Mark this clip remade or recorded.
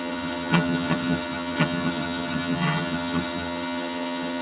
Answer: remade